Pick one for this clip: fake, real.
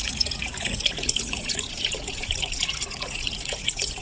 fake